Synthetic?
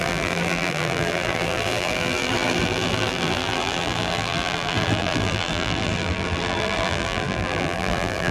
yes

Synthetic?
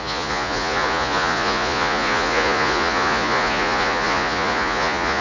yes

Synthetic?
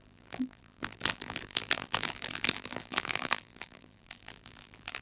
yes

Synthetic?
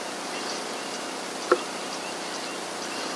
no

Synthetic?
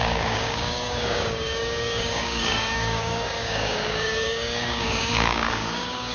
yes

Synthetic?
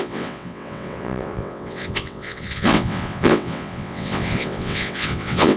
yes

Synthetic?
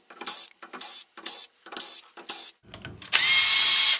no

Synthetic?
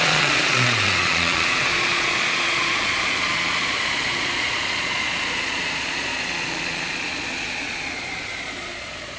yes